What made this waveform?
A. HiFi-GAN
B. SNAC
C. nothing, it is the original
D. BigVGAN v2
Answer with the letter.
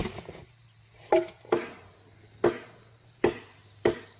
C